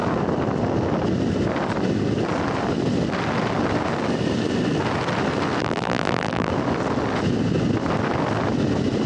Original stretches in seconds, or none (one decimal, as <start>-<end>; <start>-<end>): 0.0-5.6; 6.5-9.1